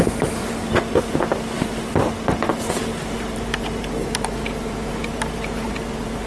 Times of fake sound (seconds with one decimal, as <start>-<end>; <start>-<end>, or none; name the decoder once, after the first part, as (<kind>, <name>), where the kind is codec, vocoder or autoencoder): 2.9-6.3 (vocoder, BigVGAN v2)